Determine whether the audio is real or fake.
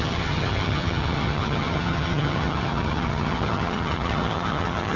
fake